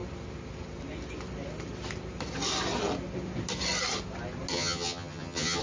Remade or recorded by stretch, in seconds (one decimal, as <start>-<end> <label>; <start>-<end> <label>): 0.0-4.5 recorded; 4.5-5.6 remade